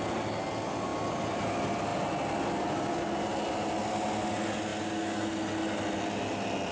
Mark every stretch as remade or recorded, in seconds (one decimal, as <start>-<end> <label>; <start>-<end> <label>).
0.0-6.7 recorded